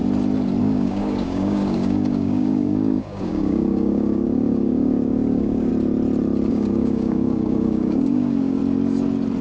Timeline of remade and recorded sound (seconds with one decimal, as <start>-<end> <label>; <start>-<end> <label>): 0.0-0.6 recorded; 0.6-5.7 remade; 5.7-6.5 recorded; 6.5-8.6 remade; 8.6-9.4 recorded